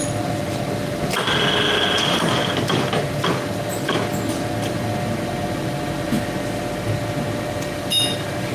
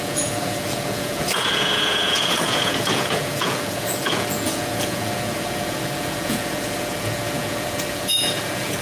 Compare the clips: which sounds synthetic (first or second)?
second